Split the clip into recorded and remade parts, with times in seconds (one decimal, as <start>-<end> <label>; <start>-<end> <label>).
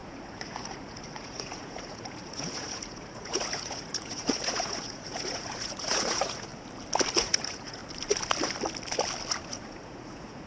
0.0-6.5 remade; 6.5-7.2 recorded; 7.2-7.8 remade; 7.8-9.5 recorded; 9.5-10.5 remade